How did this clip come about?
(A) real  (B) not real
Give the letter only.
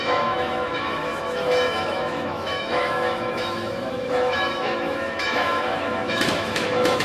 B